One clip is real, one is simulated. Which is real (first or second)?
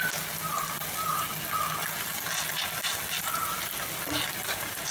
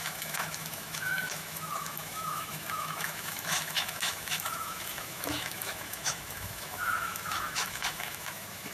first